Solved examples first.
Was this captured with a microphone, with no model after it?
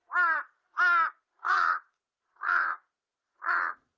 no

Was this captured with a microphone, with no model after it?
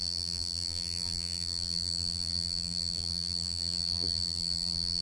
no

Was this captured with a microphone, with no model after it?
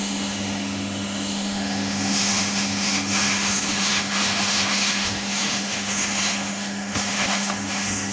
no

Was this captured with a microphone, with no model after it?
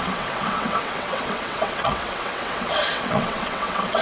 no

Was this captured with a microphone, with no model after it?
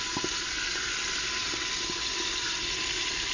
yes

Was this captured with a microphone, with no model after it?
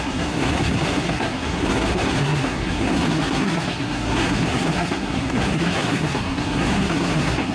no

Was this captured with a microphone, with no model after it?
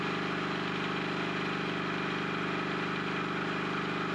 yes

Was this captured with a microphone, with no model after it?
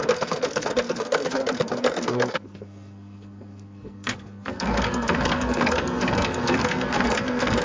no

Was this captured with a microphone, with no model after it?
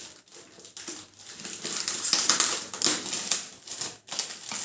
yes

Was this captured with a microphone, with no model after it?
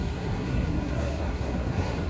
no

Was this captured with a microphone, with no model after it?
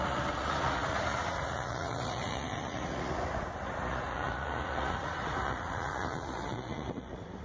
no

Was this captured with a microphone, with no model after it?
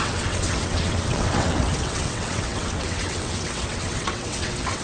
no